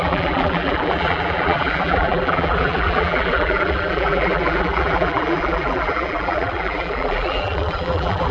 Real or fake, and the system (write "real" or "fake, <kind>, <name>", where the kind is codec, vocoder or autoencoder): fake, vocoder, BigVGAN v2